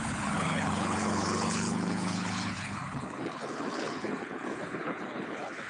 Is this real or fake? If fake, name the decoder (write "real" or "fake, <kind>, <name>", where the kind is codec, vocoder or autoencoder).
fake, codec, HILCodec